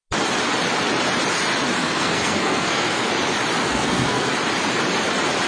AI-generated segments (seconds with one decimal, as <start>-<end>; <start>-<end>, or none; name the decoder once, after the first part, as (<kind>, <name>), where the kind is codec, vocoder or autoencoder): 1.8-3.1 (codec, SNAC); 3.6-4.3